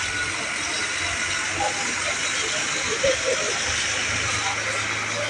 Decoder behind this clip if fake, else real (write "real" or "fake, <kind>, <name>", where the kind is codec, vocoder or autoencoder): real